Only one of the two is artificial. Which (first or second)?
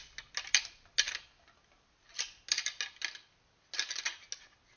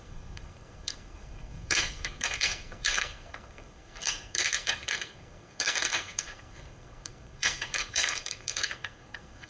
second